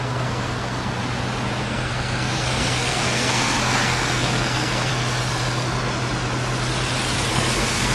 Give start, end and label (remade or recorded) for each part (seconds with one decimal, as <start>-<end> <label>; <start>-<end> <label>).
0.0-1.0 remade; 1.0-1.6 recorded; 1.6-4.9 remade; 4.9-7.3 recorded; 7.3-7.9 remade